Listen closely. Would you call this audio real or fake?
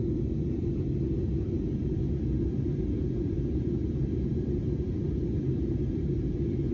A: real